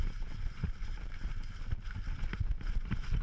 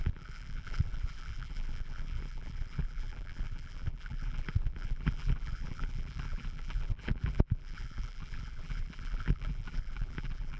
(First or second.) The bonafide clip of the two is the first